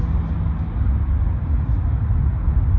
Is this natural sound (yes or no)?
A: yes